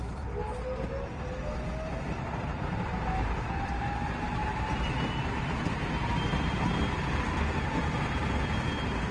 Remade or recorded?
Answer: recorded